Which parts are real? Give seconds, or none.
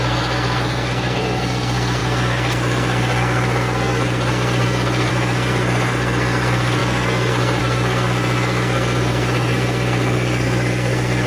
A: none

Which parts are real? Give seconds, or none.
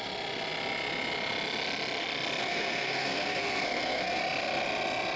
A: 0.0-2.4; 4.2-5.2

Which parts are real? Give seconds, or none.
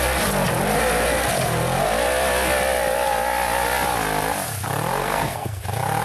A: 0.0-5.0; 5.6-6.0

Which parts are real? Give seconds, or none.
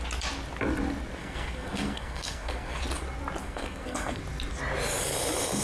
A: 0.0-1.2; 2.8-3.4; 4.2-5.6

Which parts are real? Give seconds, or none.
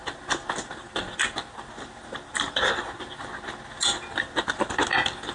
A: 0.0-5.3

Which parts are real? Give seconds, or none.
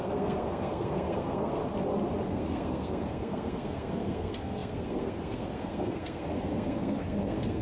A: 1.6-2.3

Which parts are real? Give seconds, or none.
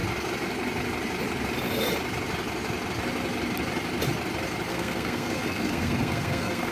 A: 0.0-4.7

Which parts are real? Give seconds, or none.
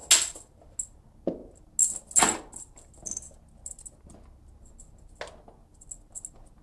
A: 0.0-6.6